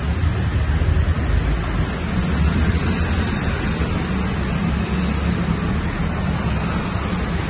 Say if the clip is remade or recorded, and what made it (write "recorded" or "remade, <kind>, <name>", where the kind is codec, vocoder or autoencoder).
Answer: recorded